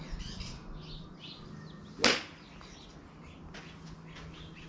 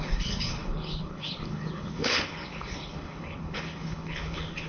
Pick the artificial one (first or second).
second